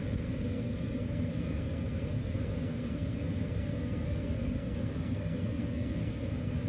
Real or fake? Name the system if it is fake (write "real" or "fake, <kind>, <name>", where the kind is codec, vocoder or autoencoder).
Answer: fake, codec, SNAC